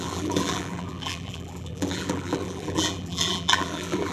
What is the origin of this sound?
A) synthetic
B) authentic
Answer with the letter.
A